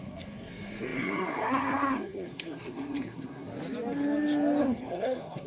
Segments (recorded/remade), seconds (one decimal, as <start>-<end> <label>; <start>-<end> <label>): 0.0-3.5 remade; 3.5-4.6 recorded; 4.6-5.5 remade

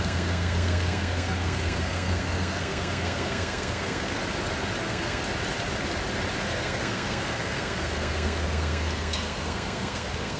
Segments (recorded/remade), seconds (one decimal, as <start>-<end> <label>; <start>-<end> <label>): 0.0-4.2 remade; 4.2-4.8 recorded; 4.8-5.2 remade; 5.2-6.4 recorded; 6.4-10.4 remade

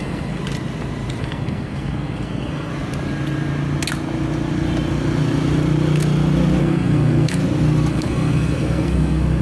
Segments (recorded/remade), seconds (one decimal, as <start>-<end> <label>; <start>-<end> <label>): 0.0-0.4 remade; 0.4-1.2 recorded; 1.2-2.7 remade; 2.7-6.6 recorded; 6.6-7.4 remade; 7.4-7.9 recorded; 7.9-9.4 remade

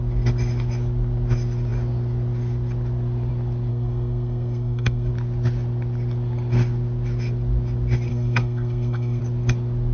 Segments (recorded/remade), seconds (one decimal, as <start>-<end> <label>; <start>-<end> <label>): 0.0-3.7 recorded; 3.7-5.1 remade; 5.1-8.1 recorded; 8.1-9.2 remade; 9.2-9.9 recorded